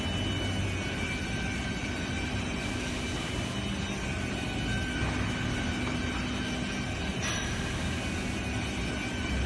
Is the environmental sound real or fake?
real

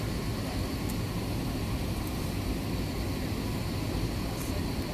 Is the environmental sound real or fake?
real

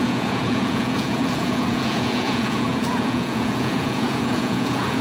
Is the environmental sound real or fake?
fake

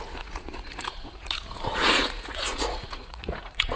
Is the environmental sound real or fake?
fake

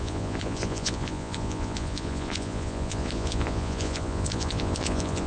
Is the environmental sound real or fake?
fake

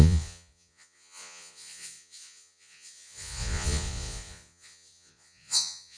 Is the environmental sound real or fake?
fake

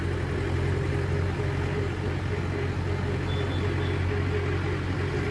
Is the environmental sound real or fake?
real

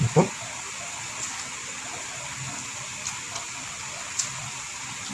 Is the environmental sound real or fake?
real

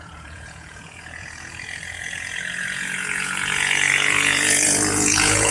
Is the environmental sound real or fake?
fake